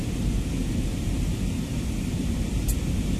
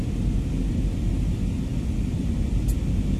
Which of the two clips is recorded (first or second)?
second